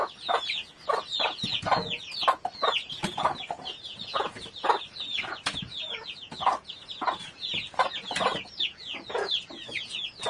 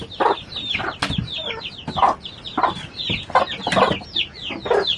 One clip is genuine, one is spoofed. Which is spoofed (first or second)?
first